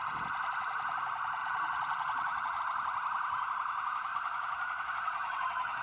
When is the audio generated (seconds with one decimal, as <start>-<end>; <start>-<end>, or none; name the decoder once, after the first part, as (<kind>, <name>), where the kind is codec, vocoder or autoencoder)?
1.4-2.6 (vocoder, Vocos); 4.1-5.8